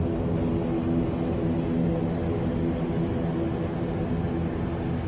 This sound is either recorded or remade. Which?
recorded